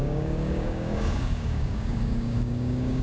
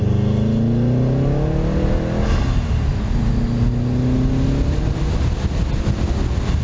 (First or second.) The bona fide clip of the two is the second